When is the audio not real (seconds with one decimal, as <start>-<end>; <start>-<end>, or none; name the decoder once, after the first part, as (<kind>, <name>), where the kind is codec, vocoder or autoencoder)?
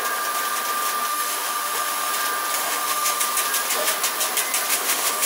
1.1-2.1 (autoencoder, DAC-VAE); 2.6-3.2; 4.7-5.3